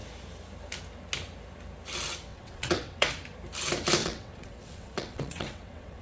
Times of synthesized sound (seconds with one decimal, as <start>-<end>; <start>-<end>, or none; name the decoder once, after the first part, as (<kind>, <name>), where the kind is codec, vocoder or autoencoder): 2.3-3.1 (vocoder, WaveNeXt); 4.0-6.0